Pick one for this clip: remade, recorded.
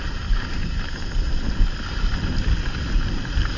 recorded